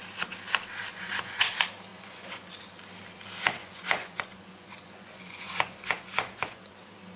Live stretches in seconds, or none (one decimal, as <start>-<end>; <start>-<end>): 0.0-0.9; 1.5-1.9; 2.5-3.6; 6.7-7.2